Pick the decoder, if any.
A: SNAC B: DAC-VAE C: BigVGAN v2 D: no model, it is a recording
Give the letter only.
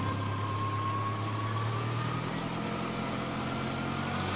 D